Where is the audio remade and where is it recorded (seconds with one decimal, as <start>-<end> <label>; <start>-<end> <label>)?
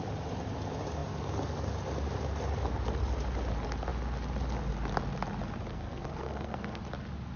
0.0-5.7 recorded; 5.7-6.8 remade; 6.8-7.4 recorded